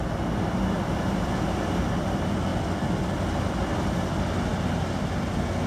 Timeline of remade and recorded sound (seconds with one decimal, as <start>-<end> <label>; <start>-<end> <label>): 0.0-5.7 recorded